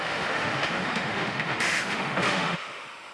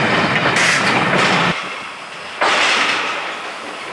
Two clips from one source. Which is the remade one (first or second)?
first